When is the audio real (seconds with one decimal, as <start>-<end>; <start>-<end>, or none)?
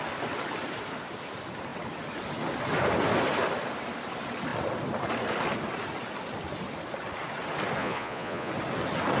0.0-7.8; 8.5-9.2